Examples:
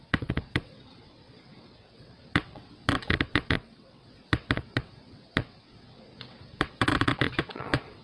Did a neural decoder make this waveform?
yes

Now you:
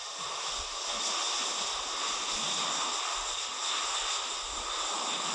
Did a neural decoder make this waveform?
no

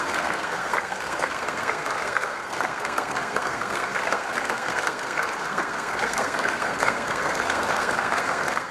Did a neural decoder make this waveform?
yes